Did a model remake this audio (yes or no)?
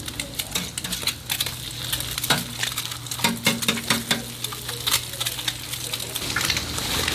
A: no